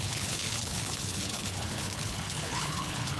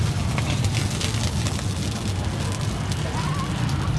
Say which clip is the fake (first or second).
first